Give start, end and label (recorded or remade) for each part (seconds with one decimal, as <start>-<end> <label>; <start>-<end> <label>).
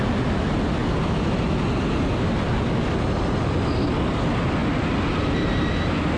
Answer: 0.0-6.2 recorded